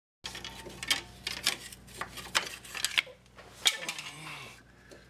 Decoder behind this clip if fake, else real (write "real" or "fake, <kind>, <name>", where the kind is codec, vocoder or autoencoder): real